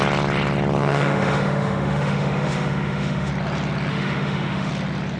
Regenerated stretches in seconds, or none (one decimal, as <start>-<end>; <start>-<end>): 0.8-3.3; 3.9-4.7